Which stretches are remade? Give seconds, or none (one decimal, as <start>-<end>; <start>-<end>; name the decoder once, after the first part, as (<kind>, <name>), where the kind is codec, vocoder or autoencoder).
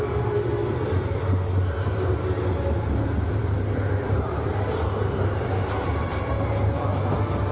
3.4-4.5 (vocoder, BigVGAN v2)